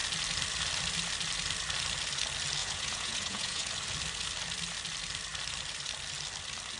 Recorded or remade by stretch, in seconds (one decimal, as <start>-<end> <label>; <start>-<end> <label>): 0.0-2.6 recorded; 2.6-3.7 remade; 3.7-6.8 recorded